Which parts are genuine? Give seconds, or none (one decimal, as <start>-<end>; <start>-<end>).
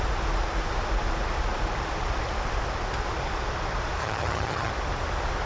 0.0-4.0; 4.7-5.5